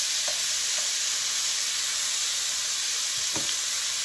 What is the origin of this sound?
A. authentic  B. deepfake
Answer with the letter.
A